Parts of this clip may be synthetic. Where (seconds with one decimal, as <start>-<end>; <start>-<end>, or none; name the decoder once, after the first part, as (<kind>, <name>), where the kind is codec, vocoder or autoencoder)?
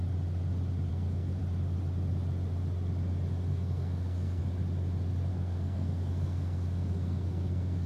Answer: 0.9-1.4 (codec, SNAC); 3.5-4.4; 5.3-7.9